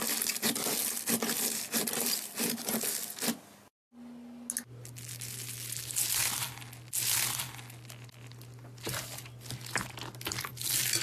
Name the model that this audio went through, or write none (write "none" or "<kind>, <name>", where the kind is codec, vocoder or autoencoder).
none